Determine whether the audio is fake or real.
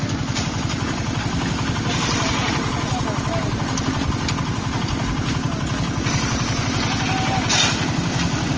real